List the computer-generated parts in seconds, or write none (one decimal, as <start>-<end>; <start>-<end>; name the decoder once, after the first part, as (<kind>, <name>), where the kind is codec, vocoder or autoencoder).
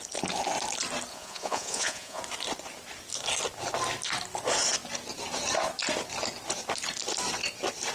1.1-2.2 (vocoder, Vocos)